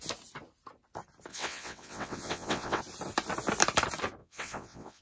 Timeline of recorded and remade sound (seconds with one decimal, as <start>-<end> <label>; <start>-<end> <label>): 0.0-1.3 recorded; 1.3-2.8 remade; 2.8-4.2 recorded; 4.2-5.0 remade